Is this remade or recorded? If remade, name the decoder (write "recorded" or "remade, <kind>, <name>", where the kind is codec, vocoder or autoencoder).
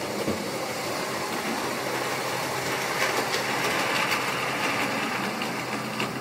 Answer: recorded